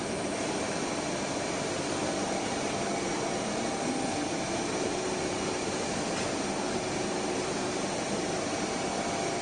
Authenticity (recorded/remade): remade